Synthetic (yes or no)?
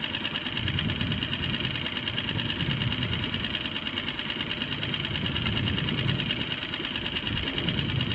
no